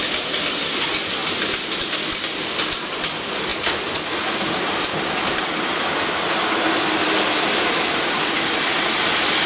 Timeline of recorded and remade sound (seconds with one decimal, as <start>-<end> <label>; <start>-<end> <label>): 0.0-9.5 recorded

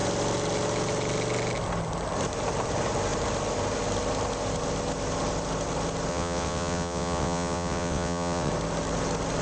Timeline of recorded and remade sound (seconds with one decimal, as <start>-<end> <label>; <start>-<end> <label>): 0.0-6.1 recorded; 6.1-8.5 remade; 8.5-9.4 recorded

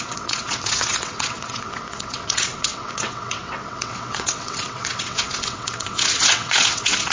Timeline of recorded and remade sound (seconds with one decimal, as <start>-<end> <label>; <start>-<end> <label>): 0.0-7.1 remade